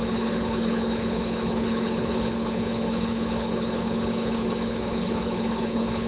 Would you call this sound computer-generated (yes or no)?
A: yes